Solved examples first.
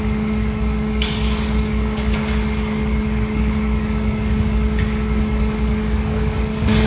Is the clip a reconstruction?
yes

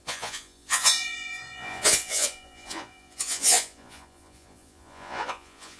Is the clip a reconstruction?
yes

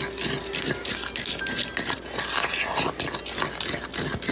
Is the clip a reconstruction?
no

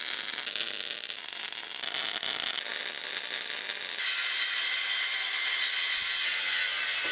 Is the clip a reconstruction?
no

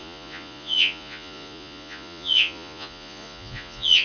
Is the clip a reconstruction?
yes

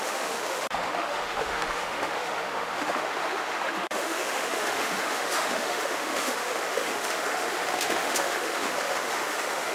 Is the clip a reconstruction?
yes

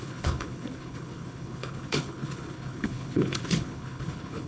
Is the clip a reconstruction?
yes